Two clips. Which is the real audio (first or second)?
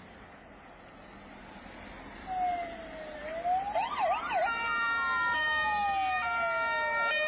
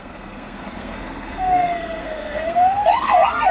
first